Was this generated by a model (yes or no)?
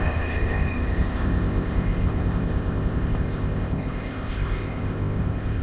yes